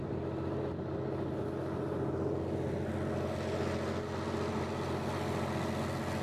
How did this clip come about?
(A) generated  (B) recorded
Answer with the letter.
B